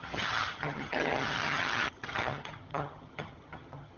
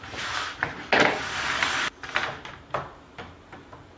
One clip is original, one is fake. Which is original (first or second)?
second